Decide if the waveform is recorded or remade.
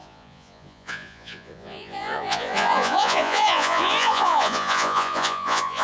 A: remade